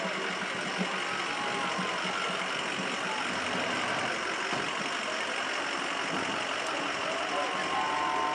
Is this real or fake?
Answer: real